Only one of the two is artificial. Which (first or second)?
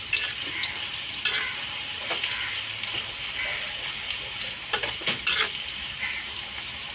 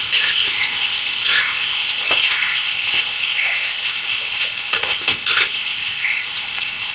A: second